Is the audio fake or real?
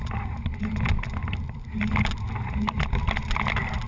real